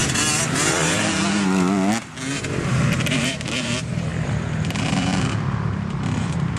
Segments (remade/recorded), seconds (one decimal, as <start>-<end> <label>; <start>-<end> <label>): 0.0-2.3 recorded; 2.3-6.6 remade